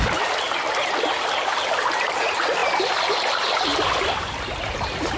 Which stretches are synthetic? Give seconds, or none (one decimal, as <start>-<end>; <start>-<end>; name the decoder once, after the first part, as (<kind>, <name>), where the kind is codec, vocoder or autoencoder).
none